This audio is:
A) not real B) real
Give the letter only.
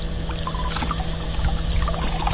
B